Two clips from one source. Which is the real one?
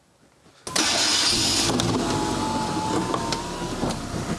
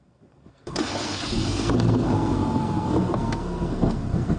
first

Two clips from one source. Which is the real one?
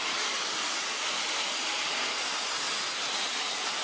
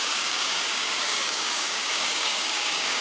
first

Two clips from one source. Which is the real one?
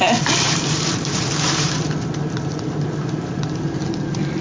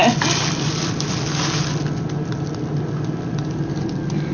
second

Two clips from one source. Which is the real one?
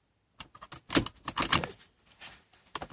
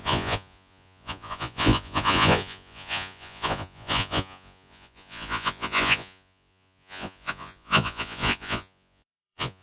first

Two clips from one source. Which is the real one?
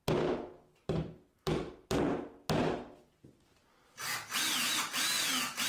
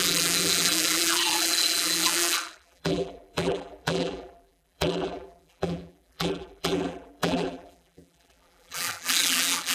first